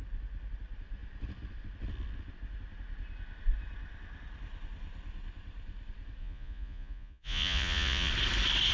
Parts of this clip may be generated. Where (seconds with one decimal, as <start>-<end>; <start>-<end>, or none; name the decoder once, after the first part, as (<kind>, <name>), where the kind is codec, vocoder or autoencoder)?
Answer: 6.2-8.1 (vocoder, Vocos)